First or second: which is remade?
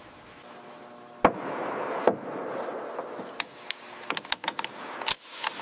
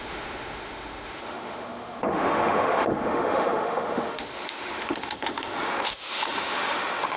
second